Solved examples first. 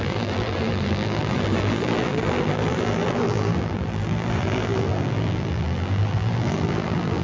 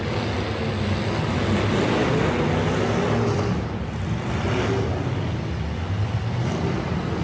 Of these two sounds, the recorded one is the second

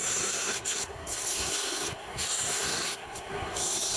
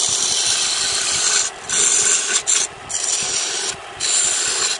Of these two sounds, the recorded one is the second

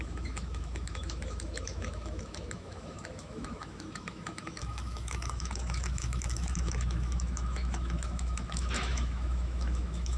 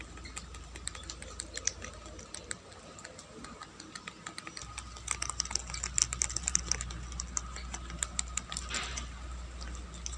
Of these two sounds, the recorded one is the second